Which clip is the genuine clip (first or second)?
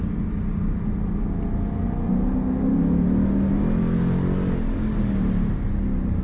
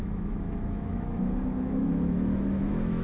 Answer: first